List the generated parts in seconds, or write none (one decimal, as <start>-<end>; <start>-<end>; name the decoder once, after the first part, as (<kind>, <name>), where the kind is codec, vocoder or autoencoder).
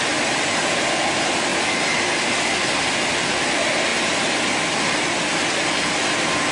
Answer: none